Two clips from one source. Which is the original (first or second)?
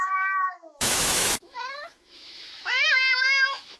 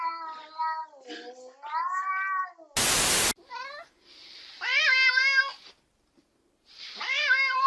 second